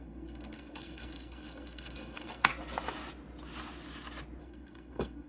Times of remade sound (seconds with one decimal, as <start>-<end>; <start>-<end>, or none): 0.0-2.5; 4.4-5.3